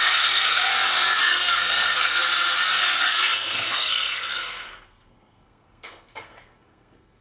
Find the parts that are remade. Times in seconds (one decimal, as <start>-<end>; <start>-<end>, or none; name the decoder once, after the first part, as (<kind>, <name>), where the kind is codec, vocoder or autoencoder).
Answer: 0.0-0.7 (codec, SNAC); 1.2-2.2; 2.8-7.2